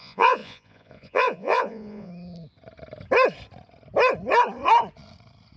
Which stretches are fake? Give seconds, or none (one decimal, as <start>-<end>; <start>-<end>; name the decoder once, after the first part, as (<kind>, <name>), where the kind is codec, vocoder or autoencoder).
0.0-2.1 (vocoder, Vocos)